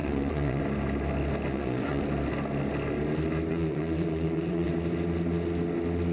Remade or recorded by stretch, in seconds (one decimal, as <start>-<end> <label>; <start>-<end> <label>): 0.0-0.6 remade; 0.6-1.5 recorded; 1.5-2.0 remade; 2.0-3.5 recorded; 3.5-4.7 remade; 4.7-6.1 recorded